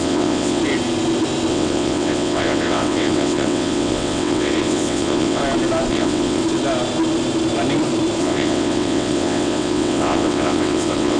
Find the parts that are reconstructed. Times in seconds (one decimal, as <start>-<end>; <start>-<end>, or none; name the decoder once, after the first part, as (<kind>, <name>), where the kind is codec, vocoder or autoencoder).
0.0-0.6 (vocoder, WaveNeXt); 1.5-5.4; 5.9-6.4; 8.2-11.2